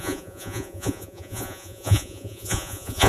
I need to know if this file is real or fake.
fake